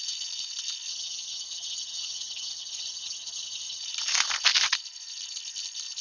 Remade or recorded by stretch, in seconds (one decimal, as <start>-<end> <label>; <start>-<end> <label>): 0.0-0.9 recorded; 0.9-3.8 remade; 3.8-6.0 recorded